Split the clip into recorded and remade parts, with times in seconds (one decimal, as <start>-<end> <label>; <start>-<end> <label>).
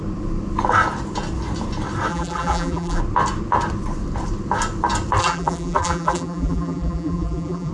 0.0-2.1 recorded; 2.1-3.0 remade; 3.0-5.2 recorded; 5.2-7.7 remade